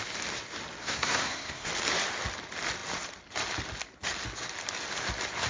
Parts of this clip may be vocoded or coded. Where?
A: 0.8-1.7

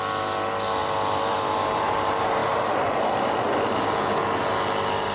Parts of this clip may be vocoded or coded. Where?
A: 0.8-1.9

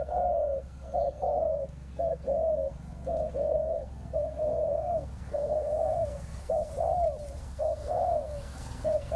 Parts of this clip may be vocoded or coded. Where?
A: 0.0-6.7; 7.4-9.2

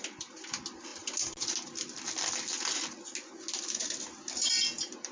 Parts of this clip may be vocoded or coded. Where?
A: none

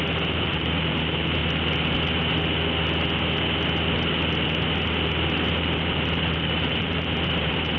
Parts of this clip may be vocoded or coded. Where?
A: 0.0-1.4; 5.6-7.8

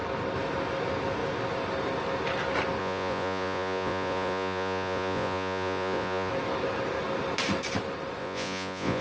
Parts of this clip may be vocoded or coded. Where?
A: 2.8-6.3; 8.2-9.0